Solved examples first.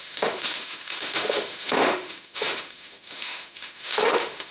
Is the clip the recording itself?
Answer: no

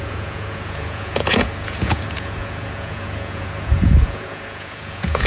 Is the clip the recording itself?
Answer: no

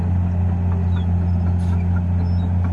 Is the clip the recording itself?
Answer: yes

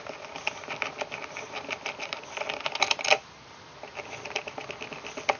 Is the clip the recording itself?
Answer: yes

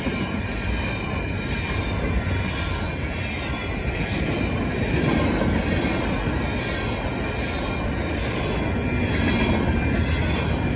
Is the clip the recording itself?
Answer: yes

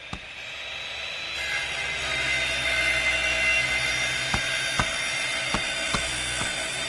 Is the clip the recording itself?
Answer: yes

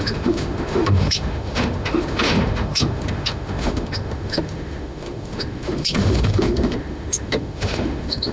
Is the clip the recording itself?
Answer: no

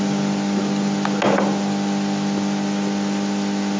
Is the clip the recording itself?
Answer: yes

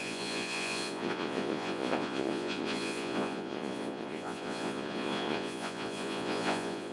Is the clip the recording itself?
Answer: no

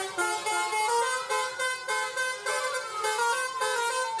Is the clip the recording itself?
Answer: yes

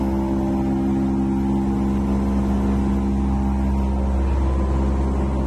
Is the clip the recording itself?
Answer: yes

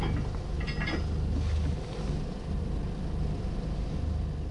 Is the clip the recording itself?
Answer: yes